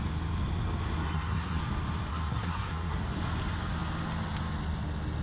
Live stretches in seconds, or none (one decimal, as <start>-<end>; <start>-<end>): 0.0-1.0; 1.6-2.1; 3.0-5.2